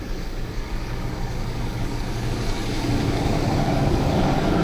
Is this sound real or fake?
fake